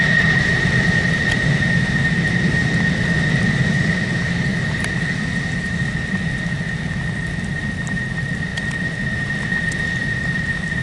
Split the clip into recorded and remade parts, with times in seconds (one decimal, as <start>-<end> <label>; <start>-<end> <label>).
0.0-4.5 remade; 4.5-6.0 recorded; 6.0-10.8 remade